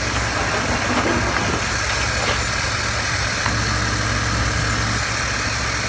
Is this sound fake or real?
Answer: real